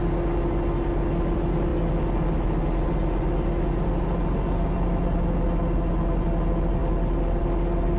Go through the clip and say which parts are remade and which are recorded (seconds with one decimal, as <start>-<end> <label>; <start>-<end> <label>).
0.0-8.0 recorded